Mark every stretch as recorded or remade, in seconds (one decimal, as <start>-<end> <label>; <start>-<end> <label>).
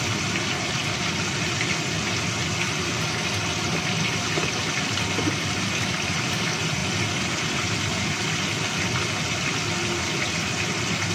0.0-0.8 remade; 0.8-4.7 recorded; 4.7-6.8 remade; 6.8-11.1 recorded